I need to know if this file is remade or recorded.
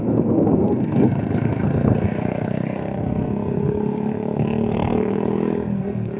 remade